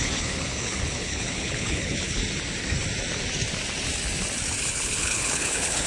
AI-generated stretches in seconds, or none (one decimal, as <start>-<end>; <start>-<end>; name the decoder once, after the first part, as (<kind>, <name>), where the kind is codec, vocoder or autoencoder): 0.0-2.2 (codec, HILCodec); 4.6-5.9